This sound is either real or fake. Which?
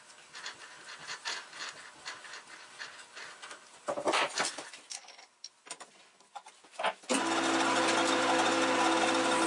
real